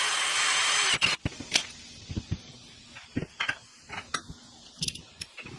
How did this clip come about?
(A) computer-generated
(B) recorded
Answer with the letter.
B